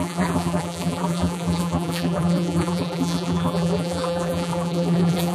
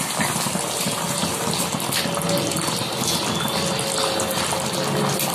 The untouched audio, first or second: second